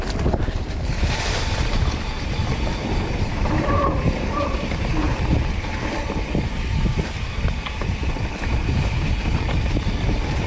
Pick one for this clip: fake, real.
fake